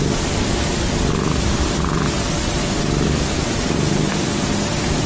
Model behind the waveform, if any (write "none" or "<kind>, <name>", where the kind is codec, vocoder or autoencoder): none